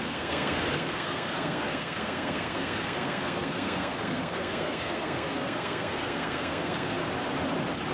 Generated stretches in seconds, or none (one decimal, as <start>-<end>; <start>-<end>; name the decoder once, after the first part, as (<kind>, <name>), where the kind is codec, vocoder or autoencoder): 0.0-7.0 (codec, SNAC)